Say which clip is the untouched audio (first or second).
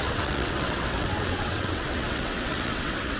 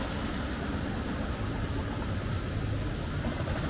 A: second